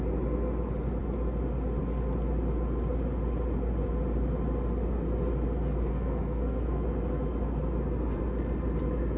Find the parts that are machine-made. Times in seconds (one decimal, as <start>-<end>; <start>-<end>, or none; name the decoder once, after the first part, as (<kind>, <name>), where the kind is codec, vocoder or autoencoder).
5.9-6.8 (codec, SNAC)